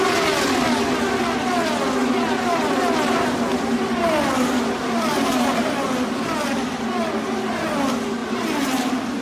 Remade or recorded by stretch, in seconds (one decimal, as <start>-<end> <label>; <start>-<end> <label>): 0.0-8.2 recorded; 8.2-9.2 remade